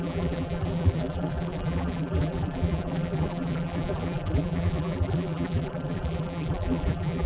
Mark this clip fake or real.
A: fake